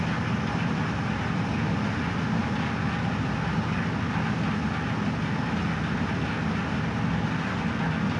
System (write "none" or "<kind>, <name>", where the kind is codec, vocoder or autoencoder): none